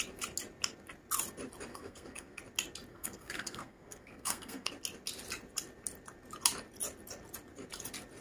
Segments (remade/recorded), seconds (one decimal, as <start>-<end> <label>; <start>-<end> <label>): 0.0-1.7 recorded; 1.7-2.4 remade; 2.4-2.9 recorded; 2.9-4.7 remade; 4.7-8.2 recorded